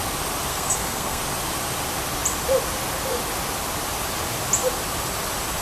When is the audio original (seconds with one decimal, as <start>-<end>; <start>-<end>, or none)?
0.0-0.5; 1.2-5.6